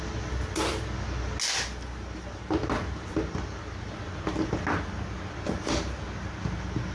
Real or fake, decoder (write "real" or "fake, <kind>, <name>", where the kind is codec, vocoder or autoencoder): real